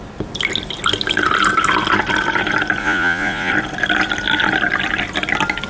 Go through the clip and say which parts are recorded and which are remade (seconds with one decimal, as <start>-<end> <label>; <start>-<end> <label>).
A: 0.0-2.8 recorded; 2.8-3.5 remade; 3.5-5.7 recorded

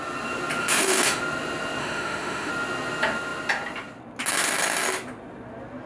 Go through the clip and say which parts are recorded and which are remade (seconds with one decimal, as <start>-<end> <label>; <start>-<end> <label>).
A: 0.0-0.6 recorded; 0.6-1.2 remade; 1.2-1.8 recorded; 1.8-2.5 remade; 2.5-5.9 recorded

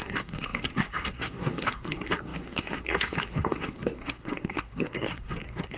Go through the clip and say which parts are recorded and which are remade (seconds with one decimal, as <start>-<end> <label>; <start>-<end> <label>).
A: 0.0-5.8 remade